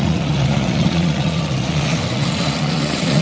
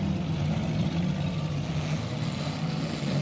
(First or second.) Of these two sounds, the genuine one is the second